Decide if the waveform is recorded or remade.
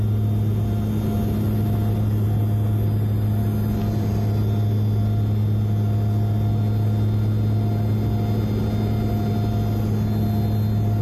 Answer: recorded